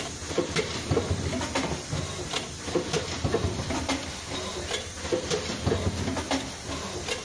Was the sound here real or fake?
real